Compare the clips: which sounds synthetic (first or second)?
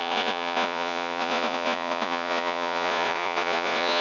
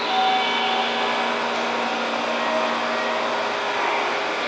first